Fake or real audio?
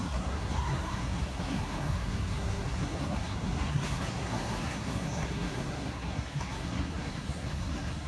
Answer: fake